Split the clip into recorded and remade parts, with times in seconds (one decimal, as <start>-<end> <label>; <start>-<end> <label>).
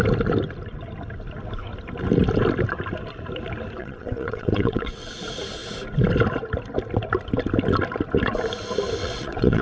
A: 0.0-3.8 recorded; 3.8-5.1 remade; 5.1-9.0 recorded; 9.0-9.6 remade